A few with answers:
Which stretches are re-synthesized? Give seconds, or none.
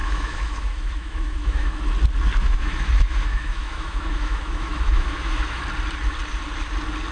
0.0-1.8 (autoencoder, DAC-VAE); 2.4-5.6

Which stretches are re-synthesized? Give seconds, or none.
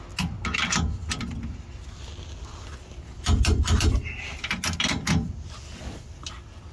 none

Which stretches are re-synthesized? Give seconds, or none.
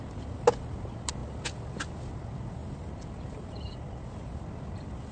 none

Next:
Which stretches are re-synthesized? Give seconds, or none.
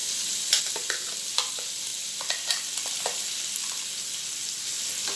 none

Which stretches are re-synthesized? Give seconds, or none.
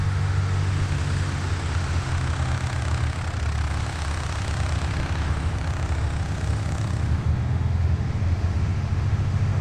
0.0-3.2 (autoencoder, DAC-VAE); 3.7-9.6